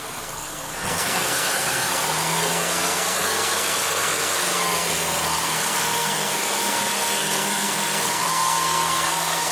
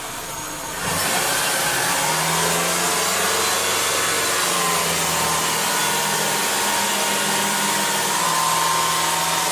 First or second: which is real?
second